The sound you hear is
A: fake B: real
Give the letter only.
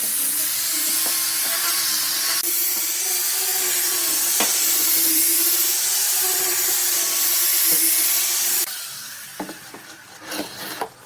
A